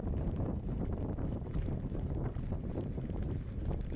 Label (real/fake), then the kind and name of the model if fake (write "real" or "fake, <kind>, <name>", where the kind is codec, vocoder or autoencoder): fake, vocoder, BigVGAN v2